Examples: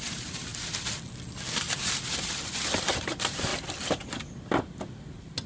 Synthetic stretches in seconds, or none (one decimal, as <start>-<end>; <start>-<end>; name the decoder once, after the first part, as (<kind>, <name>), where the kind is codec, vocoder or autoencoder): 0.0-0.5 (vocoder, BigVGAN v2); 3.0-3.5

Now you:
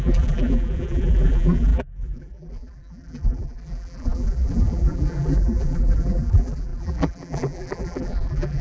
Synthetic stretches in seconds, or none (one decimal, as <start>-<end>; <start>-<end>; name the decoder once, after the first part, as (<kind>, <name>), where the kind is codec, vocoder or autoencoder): 0.0-8.6 (vocoder, BigVGAN v2)

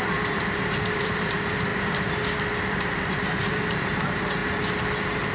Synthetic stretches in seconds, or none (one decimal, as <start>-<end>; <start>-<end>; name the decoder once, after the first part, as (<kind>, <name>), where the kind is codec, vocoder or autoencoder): 0.0-1.7 (vocoder, BigVGAN v2); 2.7-4.4

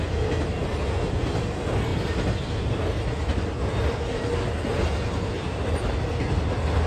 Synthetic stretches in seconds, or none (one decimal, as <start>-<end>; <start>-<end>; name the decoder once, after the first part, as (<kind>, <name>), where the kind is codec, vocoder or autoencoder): none

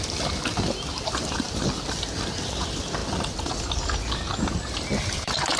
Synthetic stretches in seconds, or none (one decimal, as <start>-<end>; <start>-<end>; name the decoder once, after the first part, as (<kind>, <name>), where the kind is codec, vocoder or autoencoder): 0.9-1.7 (vocoder, BigVGAN v2)

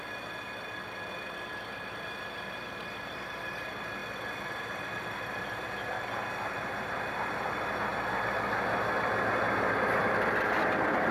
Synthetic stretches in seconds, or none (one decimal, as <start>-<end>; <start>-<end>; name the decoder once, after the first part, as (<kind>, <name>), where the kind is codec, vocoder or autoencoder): 0.0-4.0 (vocoder, BigVGAN v2); 4.8-7.9; 10.0-11.1

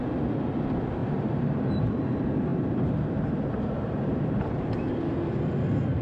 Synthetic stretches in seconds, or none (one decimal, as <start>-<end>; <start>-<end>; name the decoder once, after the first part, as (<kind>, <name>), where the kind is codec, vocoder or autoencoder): 1.0-2.0 (vocoder, BigVGAN v2); 2.5-5.2

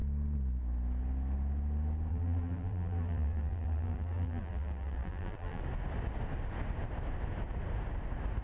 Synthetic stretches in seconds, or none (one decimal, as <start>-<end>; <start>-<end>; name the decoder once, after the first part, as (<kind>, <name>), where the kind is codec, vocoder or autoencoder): 2.1-5.6 (vocoder, BigVGAN v2)